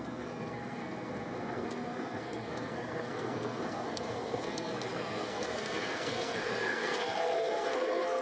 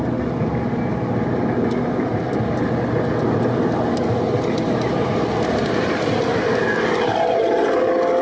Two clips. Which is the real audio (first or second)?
second